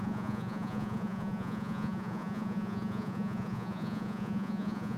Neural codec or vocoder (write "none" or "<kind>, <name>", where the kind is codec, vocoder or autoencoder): vocoder, Vocos